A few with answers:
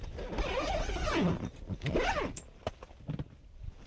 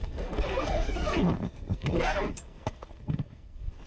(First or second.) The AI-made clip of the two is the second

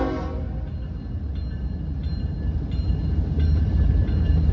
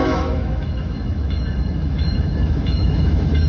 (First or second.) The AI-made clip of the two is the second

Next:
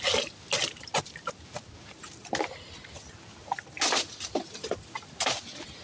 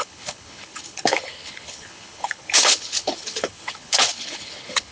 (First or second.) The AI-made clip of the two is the second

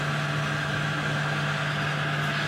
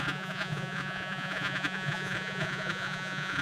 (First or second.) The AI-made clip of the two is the second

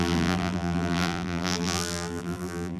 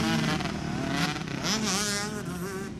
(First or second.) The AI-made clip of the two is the first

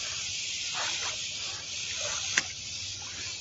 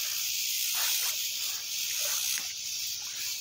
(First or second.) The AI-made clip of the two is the second